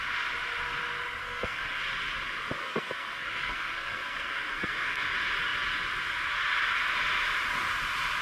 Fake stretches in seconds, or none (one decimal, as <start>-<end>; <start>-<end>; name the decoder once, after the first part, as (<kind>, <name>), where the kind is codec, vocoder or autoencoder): 1.2-1.8 (codec, SNAC); 2.6-5.1